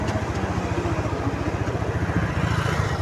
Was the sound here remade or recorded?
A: recorded